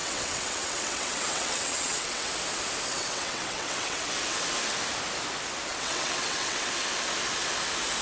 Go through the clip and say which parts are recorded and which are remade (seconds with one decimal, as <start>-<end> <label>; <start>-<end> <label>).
0.0-2.3 remade; 2.3-2.9 recorded; 2.9-4.1 remade; 4.1-5.7 recorded; 5.7-6.7 remade; 6.7-8.0 recorded